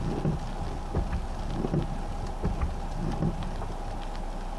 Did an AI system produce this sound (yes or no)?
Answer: no